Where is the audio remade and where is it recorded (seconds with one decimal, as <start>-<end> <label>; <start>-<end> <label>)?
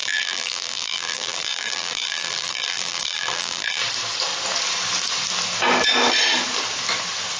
0.0-3.8 remade; 3.8-7.4 recorded